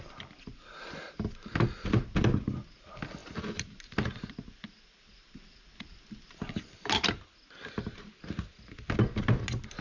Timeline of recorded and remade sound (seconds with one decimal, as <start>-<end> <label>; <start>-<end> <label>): 0.0-9.8 recorded

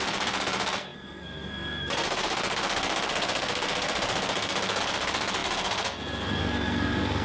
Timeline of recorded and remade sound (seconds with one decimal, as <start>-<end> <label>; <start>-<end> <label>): 0.0-7.2 remade

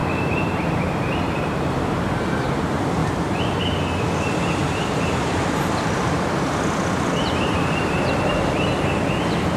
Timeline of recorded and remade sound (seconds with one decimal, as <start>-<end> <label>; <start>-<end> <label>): 0.0-2.6 remade; 2.6-4.6 recorded; 4.6-6.5 remade; 6.5-7.2 recorded; 7.2-8.3 remade; 8.3-9.6 recorded

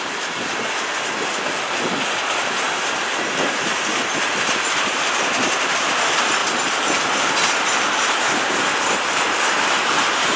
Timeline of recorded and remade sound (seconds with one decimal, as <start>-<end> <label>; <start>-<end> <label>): 0.0-10.4 recorded

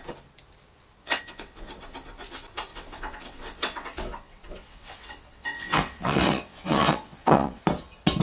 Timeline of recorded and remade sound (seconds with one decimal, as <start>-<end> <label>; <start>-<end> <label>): 0.0-1.0 recorded; 1.0-1.7 remade; 1.7-2.7 recorded; 2.7-7.6 remade; 7.6-8.2 recorded

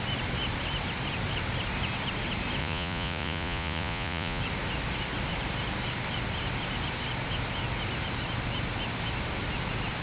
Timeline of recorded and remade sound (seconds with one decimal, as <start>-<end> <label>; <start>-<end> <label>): 0.0-2.6 recorded; 2.6-4.4 remade; 4.4-10.0 recorded

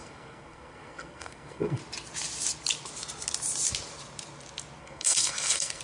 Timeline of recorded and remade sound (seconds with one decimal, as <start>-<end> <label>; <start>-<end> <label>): 0.0-1.8 remade; 1.8-4.8 recorded; 4.8-5.8 remade

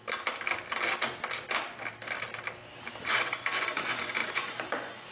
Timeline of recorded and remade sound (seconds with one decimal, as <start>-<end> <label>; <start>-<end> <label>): 0.0-3.1 recorded; 3.1-5.1 remade